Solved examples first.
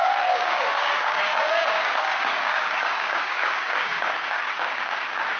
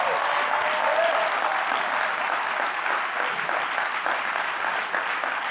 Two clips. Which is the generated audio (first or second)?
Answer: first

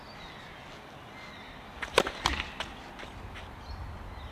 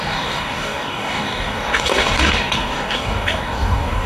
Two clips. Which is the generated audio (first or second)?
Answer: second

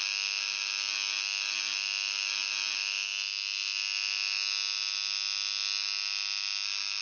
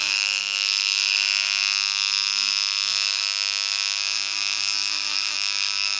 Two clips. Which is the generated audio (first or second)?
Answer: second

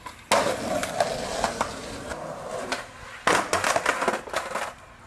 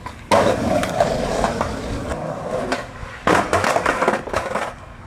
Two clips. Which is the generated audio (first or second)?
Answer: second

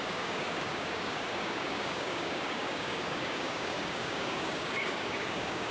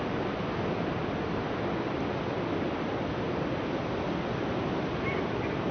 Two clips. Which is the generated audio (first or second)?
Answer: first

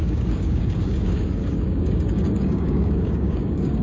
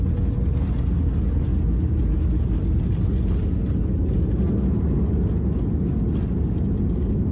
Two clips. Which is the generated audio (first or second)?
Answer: first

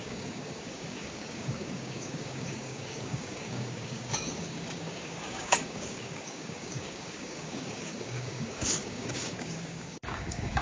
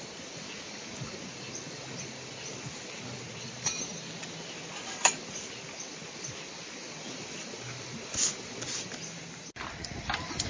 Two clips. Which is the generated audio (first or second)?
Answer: first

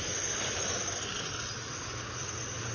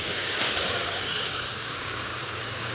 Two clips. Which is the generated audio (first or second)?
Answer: second